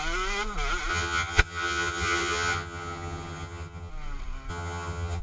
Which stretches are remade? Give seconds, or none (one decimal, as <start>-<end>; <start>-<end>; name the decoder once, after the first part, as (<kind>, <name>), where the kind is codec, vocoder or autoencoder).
0.9-3.9 (vocoder, HiFi-GAN); 4.5-5.2